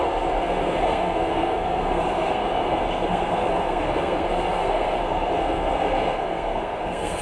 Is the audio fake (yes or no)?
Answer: yes